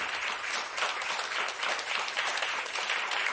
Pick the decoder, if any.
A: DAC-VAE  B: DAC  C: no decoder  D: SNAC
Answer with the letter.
C